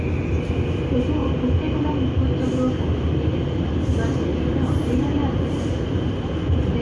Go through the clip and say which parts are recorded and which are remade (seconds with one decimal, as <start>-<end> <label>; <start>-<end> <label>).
0.0-4.3 recorded; 4.3-6.1 remade; 6.1-6.8 recorded